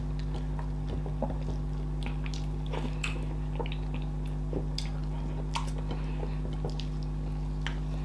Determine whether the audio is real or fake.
real